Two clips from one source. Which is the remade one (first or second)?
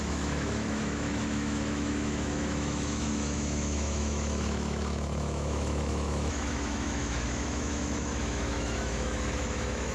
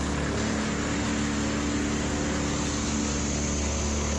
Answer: first